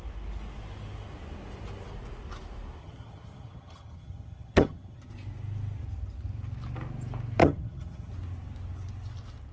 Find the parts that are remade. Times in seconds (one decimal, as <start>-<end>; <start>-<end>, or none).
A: 2.8-5.1; 7.4-8.1